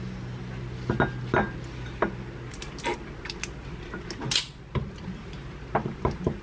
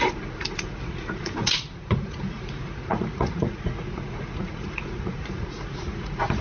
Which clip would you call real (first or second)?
first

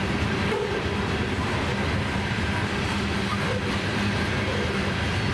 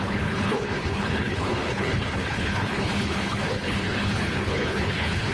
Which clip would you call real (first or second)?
first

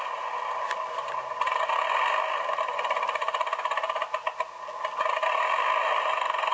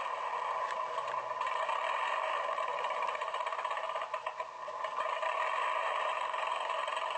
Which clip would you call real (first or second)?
first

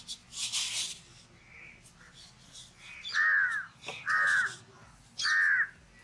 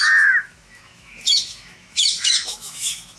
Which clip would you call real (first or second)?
first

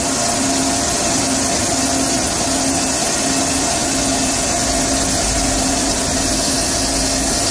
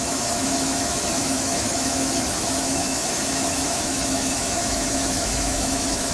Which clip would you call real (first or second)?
first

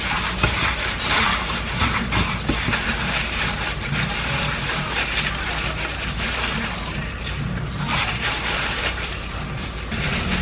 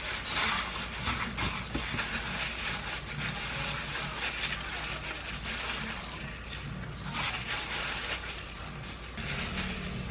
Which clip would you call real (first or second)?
second